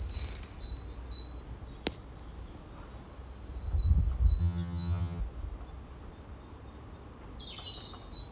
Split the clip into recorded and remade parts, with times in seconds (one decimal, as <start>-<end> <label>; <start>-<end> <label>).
0.0-4.4 recorded; 4.4-5.2 remade; 5.2-8.3 recorded